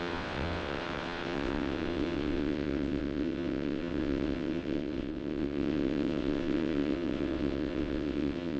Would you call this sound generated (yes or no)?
yes